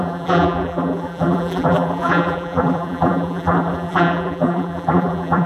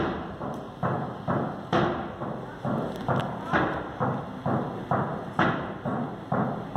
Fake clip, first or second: first